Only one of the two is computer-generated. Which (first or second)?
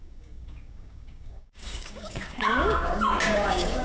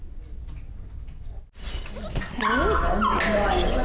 first